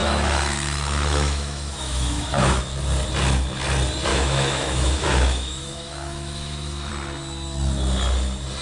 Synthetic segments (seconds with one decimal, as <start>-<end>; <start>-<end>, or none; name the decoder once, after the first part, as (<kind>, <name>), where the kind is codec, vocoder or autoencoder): 0.0-2.6 (autoencoder, DAC-VAE); 4.1-6.9